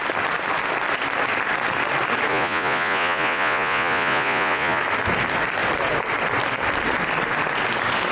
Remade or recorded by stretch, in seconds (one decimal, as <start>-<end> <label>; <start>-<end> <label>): 0.0-2.3 recorded; 2.3-4.8 remade; 4.8-8.1 recorded